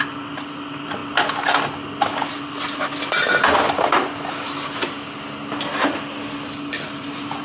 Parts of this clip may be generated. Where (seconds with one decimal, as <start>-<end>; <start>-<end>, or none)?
none